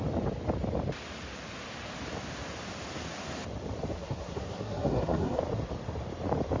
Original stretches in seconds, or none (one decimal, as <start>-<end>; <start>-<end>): 0.0-3.9; 5.4-6.6

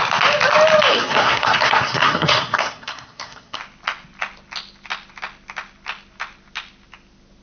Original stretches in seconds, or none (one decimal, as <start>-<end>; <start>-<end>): 0.0-0.9; 3.6-7.4

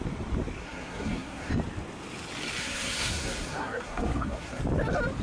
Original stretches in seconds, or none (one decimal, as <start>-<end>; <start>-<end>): 0.0-0.6; 1.5-2.6; 4.6-5.2

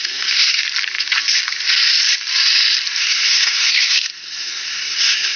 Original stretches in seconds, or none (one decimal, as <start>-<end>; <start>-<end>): 0.6-3.0